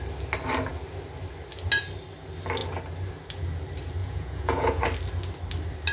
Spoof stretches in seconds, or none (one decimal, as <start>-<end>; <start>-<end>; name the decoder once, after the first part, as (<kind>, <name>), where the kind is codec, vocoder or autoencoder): 4.0-4.8 (vocoder, Vocos)